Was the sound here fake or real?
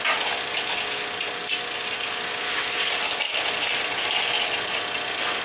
real